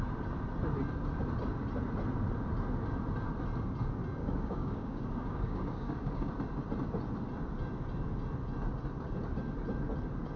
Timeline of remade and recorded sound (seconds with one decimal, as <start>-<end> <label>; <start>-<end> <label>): 0.0-4.2 recorded; 4.2-6.3 remade; 6.3-10.4 recorded